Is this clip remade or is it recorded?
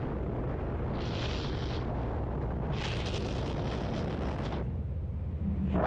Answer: recorded